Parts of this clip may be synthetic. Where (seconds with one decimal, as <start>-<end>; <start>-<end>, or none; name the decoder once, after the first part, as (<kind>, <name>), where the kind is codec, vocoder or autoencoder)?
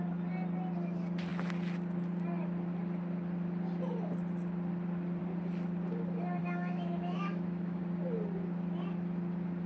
6.4-7.8 (autoencoder, DAC-VAE)